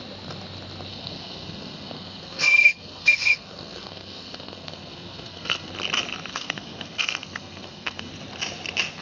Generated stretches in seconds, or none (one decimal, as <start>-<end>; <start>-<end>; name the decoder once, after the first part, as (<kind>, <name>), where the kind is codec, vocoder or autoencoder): 0.9-5.7 (codec, SNAC); 6.3-8.1